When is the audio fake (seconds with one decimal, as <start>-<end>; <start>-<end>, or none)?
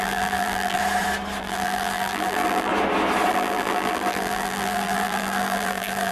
0.0-0.8; 1.4-2.7; 3.3-6.1